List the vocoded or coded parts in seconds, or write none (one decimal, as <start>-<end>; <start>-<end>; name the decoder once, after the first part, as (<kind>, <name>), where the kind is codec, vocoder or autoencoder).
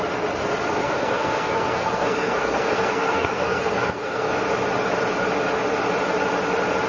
0.8-4.3 (codec, SNAC)